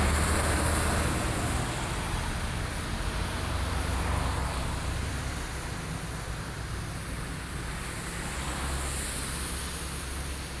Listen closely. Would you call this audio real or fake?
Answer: real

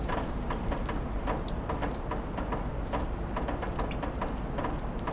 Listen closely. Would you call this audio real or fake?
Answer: real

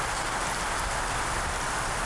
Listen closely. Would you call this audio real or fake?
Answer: real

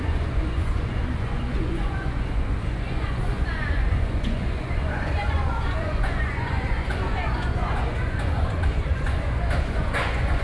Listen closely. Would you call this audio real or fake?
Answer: fake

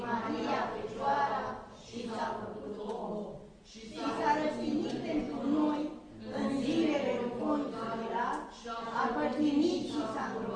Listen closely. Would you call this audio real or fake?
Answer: real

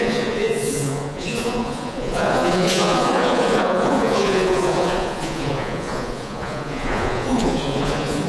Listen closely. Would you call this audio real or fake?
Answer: fake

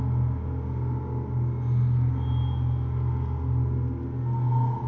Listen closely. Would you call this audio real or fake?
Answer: real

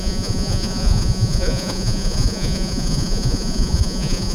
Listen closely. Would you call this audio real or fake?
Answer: fake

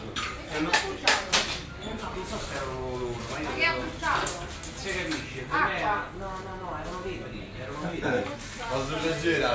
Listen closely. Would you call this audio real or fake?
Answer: real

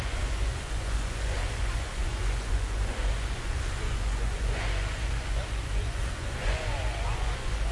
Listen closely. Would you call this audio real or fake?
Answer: fake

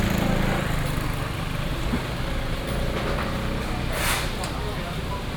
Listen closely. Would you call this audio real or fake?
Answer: real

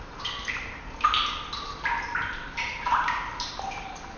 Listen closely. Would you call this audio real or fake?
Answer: real